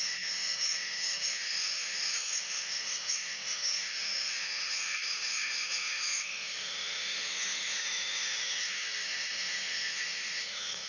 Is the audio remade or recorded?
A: remade